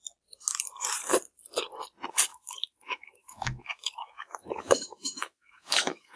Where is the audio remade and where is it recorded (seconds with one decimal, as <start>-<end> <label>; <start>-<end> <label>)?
0.0-2.3 recorded; 2.3-6.2 remade